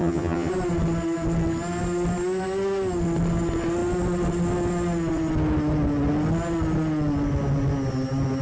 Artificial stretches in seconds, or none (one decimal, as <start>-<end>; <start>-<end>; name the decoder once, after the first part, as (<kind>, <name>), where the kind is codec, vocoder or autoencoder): 0.0-0.5 (vocoder, HiFi-GAN)